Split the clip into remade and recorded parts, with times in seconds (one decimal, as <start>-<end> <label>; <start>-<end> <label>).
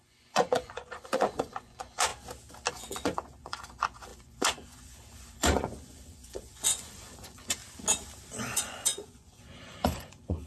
0.0-2.1 remade; 2.1-2.7 recorded; 2.7-7.6 remade; 7.6-8.4 recorded; 8.4-10.5 remade